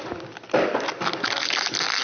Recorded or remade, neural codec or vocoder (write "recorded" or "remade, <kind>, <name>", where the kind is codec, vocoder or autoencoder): recorded